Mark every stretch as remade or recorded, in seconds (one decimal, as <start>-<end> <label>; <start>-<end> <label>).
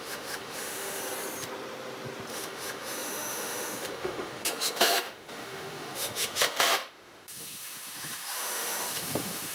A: 0.0-1.0 remade; 1.0-2.3 recorded; 2.3-9.5 remade